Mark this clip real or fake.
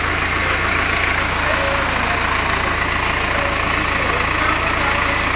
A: real